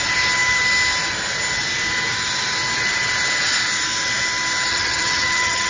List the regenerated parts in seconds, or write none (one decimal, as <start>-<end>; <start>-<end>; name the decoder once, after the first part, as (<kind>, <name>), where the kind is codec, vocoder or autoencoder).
4.7-5.7 (vocoder, HiFi-GAN)